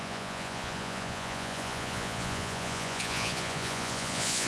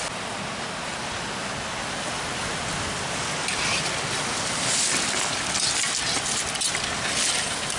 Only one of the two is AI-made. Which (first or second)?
first